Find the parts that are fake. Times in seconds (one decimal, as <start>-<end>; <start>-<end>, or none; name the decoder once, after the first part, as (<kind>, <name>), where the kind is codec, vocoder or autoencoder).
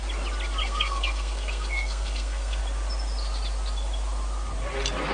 0.6-2.6 (codec, SNAC)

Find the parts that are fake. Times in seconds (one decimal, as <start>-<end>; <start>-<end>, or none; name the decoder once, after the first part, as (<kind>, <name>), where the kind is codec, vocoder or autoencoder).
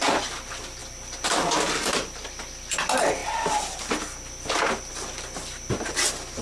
none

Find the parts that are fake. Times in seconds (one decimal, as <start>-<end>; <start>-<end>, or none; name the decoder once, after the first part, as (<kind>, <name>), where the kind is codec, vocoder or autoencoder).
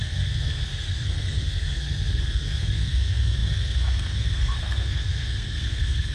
0.0-6.1 (codec, SNAC)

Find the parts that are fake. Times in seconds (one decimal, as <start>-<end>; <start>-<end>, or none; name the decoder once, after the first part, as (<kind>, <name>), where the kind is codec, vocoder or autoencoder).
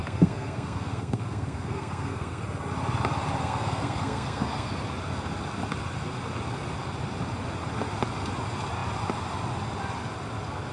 0.0-2.4 (codec, SNAC); 3.4-4.7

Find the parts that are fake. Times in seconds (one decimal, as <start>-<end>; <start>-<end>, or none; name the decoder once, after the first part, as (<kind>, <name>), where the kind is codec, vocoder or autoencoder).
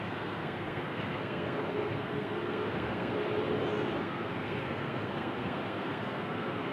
0.0-3.2 (codec, SNAC); 4.0-6.7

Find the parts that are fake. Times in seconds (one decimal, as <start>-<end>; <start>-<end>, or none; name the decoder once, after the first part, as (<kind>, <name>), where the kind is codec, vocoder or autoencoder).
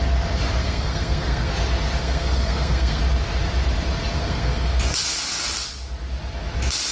0.6-1.5 (codec, SNAC); 2.0-3.0; 4.2-4.8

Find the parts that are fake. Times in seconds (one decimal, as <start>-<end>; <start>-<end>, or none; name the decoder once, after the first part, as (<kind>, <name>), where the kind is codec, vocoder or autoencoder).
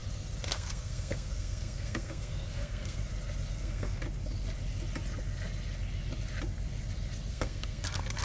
0.5-3.0 (codec, SNAC); 3.5-4.0; 7.3-8.2